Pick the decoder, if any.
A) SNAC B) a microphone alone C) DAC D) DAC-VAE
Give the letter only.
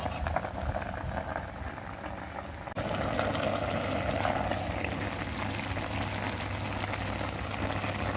B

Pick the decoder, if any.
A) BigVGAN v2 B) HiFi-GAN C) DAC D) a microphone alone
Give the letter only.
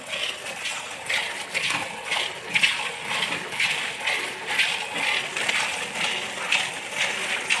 D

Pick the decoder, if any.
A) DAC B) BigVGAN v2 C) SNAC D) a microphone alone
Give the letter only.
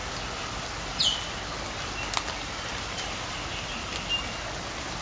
D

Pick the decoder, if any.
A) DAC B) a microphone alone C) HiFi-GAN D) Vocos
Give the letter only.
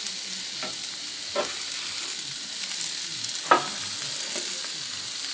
B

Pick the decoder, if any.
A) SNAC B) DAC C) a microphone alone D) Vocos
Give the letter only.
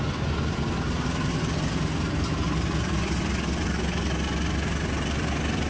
C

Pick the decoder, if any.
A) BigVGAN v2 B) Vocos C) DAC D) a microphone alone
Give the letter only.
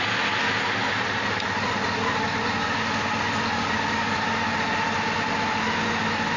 D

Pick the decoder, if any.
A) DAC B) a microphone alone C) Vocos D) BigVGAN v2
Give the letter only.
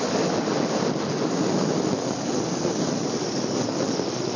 B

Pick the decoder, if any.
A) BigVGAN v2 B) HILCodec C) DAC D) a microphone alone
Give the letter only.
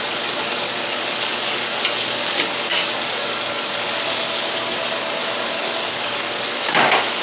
C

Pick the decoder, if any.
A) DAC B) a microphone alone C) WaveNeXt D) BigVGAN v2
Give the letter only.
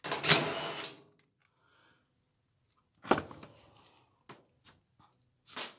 B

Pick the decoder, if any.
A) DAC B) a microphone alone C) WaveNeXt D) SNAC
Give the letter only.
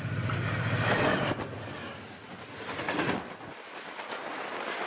B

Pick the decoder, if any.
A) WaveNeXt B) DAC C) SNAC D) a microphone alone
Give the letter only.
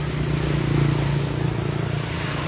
D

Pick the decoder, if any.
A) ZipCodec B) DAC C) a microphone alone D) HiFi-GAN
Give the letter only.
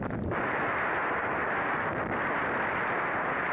C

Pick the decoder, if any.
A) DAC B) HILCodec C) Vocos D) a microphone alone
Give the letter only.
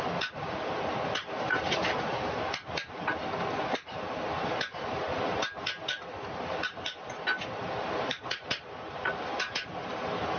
D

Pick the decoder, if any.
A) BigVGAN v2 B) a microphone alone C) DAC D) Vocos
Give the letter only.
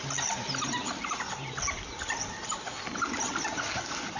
B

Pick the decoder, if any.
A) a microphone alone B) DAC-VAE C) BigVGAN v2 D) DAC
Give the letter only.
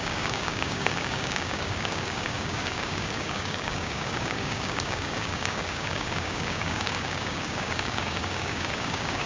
D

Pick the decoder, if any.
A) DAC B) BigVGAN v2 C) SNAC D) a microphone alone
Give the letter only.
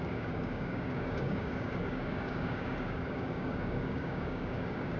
A